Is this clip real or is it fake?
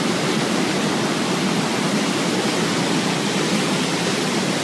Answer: real